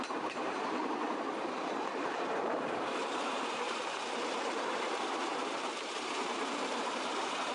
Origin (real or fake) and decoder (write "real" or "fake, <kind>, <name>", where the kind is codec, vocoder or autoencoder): fake, vocoder, BigVGAN v2